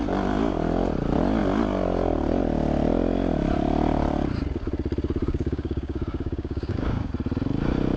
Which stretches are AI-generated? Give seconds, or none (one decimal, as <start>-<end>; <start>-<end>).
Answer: 5.2-7.1